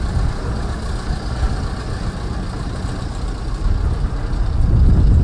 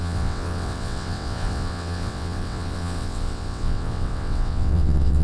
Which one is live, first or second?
first